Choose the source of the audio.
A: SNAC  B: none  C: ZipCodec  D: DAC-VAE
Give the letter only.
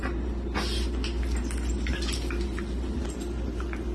B